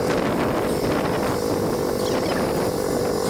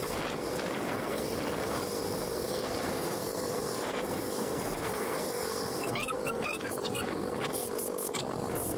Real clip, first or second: first